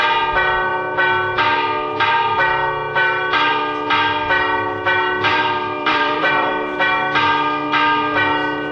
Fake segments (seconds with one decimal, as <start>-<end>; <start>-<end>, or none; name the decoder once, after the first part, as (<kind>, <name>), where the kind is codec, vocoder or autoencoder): 5.3-6.5 (vocoder, BigVGAN v2)